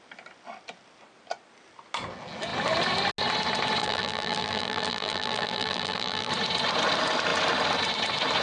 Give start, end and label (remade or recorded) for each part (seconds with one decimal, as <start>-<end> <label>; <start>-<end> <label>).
0.0-3.8 recorded; 3.8-6.3 remade; 6.3-8.4 recorded